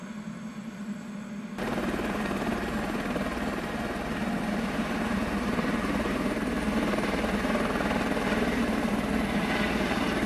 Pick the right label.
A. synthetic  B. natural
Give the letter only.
B